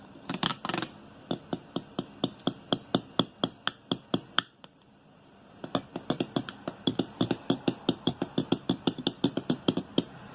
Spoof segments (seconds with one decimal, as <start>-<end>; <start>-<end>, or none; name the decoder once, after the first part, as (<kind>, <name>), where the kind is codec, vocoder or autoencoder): 0.0-0.5 (vocoder, BigVGAN v2); 4.1-10.3